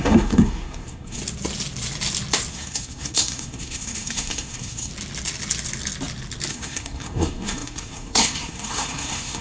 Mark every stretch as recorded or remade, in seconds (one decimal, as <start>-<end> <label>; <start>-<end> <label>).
0.0-1.2 remade; 1.2-2.5 recorded; 2.5-4.9 remade; 4.9-6.5 recorded; 6.5-9.4 remade